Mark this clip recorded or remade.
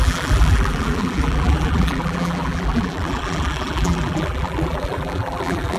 remade